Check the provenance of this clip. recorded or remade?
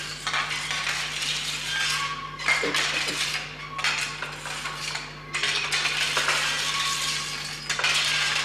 recorded